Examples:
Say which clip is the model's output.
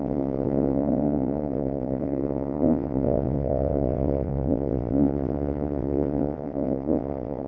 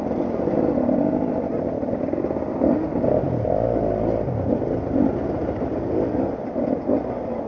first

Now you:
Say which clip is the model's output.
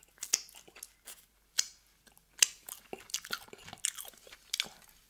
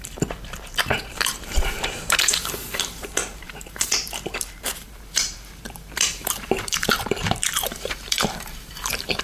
second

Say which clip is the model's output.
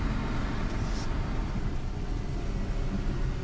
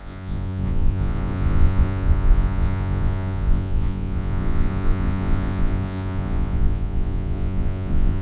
second